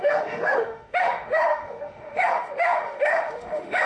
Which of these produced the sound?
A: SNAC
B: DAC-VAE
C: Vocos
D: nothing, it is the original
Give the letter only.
B